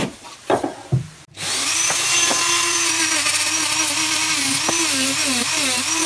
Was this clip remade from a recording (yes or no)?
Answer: no